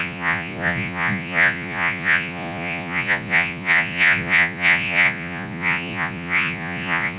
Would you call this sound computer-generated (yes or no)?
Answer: yes